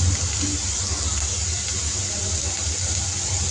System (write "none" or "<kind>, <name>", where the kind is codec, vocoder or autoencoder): none